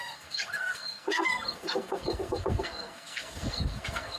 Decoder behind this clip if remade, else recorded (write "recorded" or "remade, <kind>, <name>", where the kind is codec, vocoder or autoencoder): remade, codec, SNAC